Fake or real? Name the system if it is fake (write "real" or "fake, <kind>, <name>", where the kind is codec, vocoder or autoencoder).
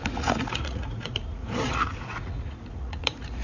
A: fake, vocoder, Vocos